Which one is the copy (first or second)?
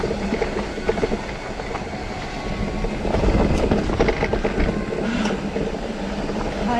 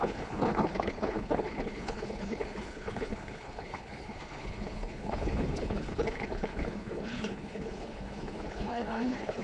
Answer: second